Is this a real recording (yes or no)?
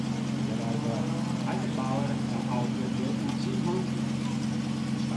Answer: yes